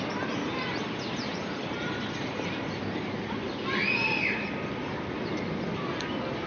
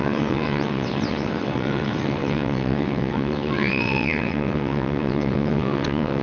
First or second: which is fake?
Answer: second